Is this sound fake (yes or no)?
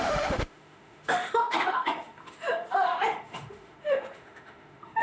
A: yes